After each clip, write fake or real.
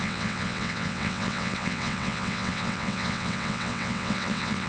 fake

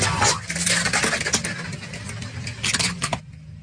real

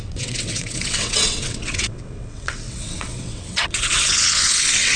fake